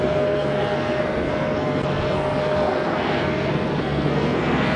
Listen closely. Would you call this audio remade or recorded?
remade